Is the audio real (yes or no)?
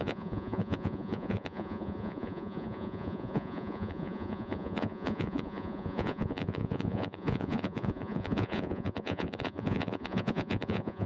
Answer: no